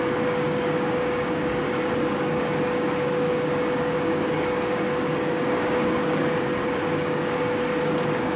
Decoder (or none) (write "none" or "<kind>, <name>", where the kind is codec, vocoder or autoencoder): codec, DAC